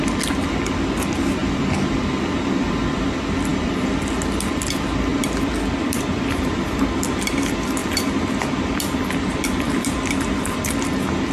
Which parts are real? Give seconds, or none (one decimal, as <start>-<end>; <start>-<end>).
0.0-3.5; 4.4-5.1; 6.9-7.8; 10.7-11.3